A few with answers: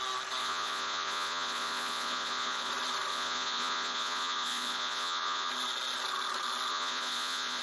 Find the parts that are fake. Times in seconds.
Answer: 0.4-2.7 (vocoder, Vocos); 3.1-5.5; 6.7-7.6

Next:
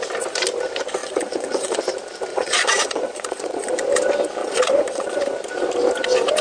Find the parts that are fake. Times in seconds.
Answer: 1.0-1.8 (vocoder, Vocos); 2.3-3.8; 4.4-5.2